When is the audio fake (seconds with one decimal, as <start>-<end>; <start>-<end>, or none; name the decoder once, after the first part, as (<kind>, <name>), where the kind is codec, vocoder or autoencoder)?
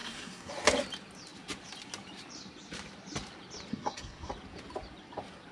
0.0-0.5 (codec, SNAC); 3.7-4.3